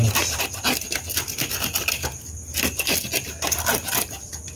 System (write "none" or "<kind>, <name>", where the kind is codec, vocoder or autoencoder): none